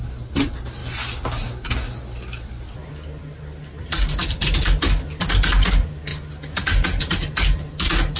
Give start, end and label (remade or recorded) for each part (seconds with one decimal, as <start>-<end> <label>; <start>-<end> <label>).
0.0-8.2 recorded